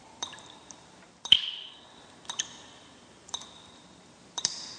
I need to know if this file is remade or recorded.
remade